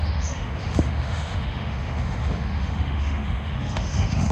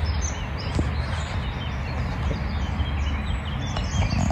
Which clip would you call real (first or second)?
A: second